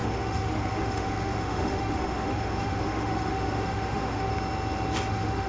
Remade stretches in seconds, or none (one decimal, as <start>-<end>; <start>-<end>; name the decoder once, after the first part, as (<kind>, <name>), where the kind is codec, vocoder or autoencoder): 0.0-4.3 (autoencoder, DAC-VAE); 5.1-5.5